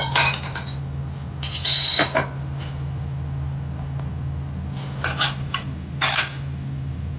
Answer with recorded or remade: recorded